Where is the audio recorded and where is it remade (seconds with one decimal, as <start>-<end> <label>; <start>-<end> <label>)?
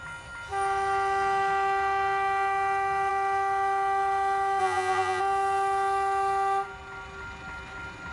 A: 0.0-4.6 recorded; 4.6-5.2 remade; 5.2-8.1 recorded